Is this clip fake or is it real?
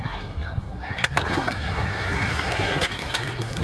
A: fake